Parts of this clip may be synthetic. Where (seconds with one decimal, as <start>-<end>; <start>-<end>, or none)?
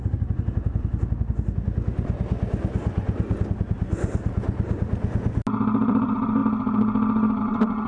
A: none